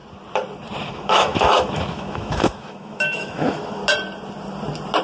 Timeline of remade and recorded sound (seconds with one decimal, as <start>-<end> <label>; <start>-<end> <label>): 0.0-0.9 recorded; 0.9-3.8 remade; 3.8-5.0 recorded